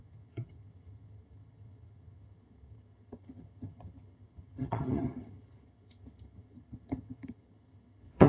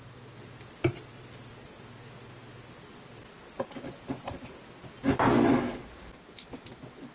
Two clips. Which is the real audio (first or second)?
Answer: second